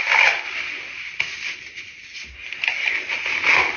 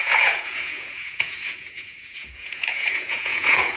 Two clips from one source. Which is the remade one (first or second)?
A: second